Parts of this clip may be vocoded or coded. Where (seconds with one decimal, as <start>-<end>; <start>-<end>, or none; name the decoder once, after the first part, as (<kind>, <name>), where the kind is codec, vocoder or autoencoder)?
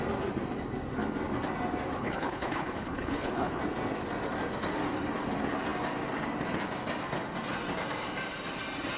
2.0-3.6 (codec, HILCodec)